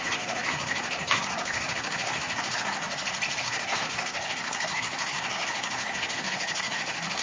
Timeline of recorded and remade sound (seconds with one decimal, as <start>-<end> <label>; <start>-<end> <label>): 0.0-2.8 remade; 2.8-3.4 recorded; 3.4-7.2 remade